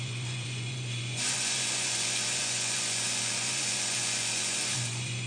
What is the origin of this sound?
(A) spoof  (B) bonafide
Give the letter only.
A